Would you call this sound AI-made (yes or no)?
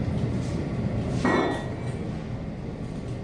no